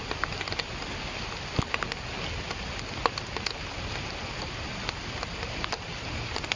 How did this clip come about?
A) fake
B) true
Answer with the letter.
B